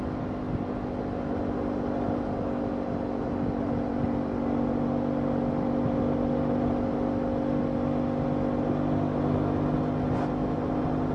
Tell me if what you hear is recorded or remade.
recorded